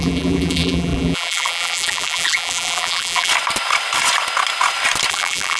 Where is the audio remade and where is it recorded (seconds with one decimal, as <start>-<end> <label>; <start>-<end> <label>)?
0.0-3.3 remade; 3.3-5.1 recorded; 5.1-5.6 remade